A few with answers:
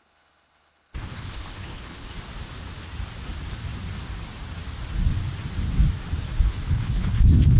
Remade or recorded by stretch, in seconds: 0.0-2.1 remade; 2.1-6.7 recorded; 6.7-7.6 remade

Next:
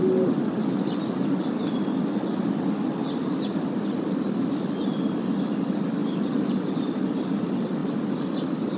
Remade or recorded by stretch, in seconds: 0.0-8.8 recorded